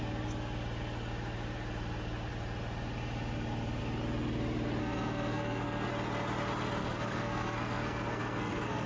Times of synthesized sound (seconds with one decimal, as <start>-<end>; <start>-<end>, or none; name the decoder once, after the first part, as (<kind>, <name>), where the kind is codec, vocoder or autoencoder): 4.8-5.9 (codec, SNAC); 6.8-8.9